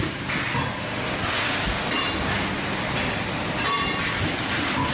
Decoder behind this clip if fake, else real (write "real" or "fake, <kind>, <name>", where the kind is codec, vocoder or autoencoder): real